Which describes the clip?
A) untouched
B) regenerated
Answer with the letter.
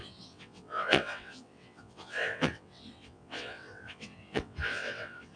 B